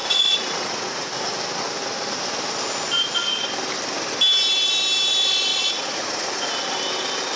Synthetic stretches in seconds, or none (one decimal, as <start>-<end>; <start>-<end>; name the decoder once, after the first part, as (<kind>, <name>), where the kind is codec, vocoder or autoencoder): 0.0-1.1 (vocoder, Vocos); 5.5-6.5